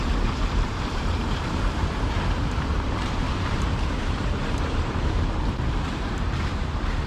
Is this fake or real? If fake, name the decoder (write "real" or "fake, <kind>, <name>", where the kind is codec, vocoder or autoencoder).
fake, vocoder, BigVGAN v2